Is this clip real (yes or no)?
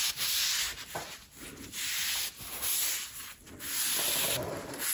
yes